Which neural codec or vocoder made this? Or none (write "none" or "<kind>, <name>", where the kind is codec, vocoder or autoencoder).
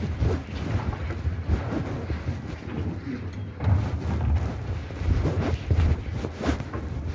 none